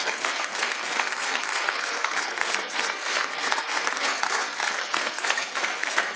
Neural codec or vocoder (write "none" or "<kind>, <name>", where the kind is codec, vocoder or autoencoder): codec, SNAC